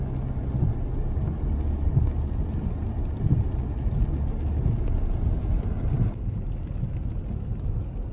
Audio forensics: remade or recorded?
recorded